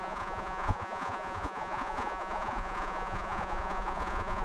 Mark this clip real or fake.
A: fake